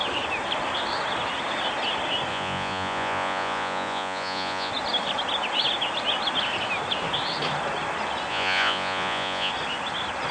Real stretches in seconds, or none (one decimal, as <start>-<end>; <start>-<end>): 0.0-2.3; 4.7-8.3; 9.5-10.3